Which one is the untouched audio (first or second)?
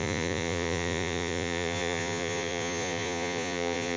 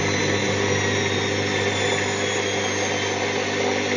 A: second